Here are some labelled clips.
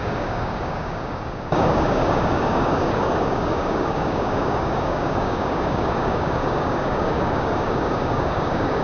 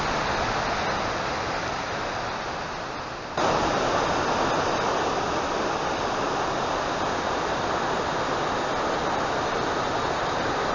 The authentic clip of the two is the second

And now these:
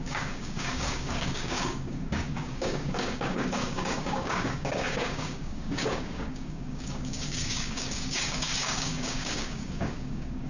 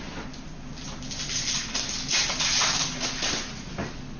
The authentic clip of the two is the second